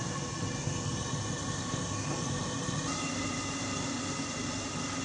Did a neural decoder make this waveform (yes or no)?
no